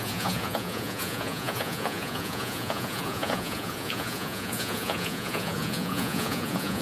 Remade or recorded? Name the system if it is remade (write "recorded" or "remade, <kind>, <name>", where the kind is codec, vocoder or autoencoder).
remade, vocoder, Vocos